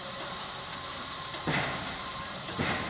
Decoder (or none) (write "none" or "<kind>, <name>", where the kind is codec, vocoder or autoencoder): vocoder, BigVGAN v2